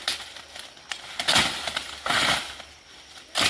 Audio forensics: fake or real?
real